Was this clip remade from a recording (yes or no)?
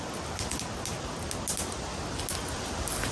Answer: no